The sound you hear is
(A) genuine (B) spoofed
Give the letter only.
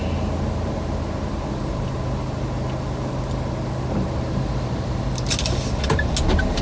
A